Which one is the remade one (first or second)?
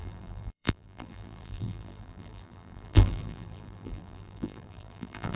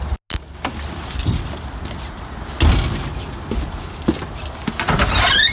first